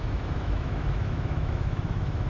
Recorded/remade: remade